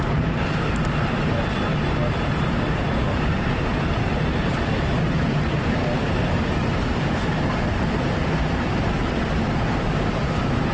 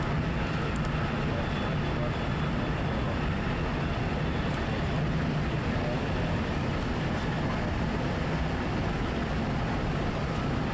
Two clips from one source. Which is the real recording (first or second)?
second